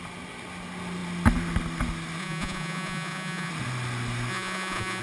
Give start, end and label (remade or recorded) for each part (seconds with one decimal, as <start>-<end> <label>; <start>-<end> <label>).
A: 0.0-2.2 recorded; 2.2-3.5 remade; 3.5-4.3 recorded; 4.3-5.0 remade